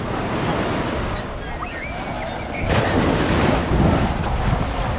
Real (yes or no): yes